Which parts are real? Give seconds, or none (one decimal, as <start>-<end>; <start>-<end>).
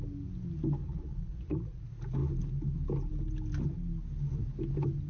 0.0-0.8; 1.8-5.1